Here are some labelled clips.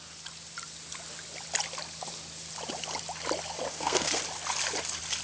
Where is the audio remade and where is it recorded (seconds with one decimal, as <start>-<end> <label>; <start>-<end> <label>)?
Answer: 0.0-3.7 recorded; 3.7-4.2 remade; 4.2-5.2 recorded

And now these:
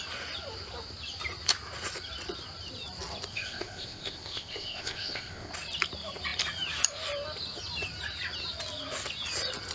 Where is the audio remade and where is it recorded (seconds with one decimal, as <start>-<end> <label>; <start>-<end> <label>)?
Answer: 0.0-3.3 recorded; 3.3-5.5 remade; 5.5-9.7 recorded

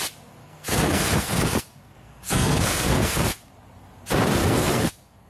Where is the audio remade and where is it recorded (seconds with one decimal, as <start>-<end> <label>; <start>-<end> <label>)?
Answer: 0.0-0.4 recorded; 0.4-3.5 remade; 3.5-4.4 recorded; 4.4-5.3 remade

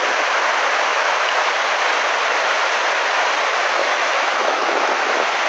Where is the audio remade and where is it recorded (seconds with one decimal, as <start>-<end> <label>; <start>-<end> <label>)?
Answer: 0.0-0.9 recorded; 0.9-1.5 remade; 1.5-3.8 recorded; 3.8-4.9 remade; 4.9-5.5 recorded

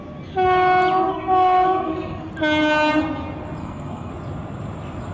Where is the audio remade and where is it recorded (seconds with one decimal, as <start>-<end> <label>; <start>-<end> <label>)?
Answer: 0.0-1.1 recorded; 1.1-2.3 remade; 2.3-3.6 recorded; 3.6-4.1 remade; 4.1-5.1 recorded

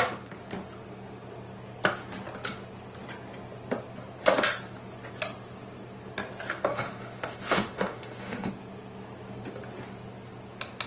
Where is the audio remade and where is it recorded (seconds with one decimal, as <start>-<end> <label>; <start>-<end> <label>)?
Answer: 0.0-6.7 recorded; 6.7-8.5 remade; 8.5-10.9 recorded

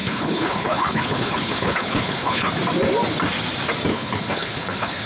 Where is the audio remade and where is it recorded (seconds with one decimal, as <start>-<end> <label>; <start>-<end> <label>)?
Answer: 0.0-2.5 remade; 2.5-3.9 recorded; 3.9-5.1 remade